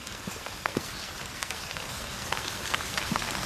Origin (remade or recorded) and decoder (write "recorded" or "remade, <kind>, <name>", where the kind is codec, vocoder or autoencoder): remade, codec, SNAC